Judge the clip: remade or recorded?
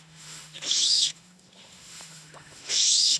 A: remade